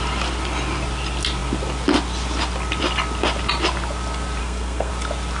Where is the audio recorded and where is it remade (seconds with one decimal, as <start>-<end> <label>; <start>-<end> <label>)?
0.0-4.4 recorded; 4.4-4.9 remade; 4.9-5.4 recorded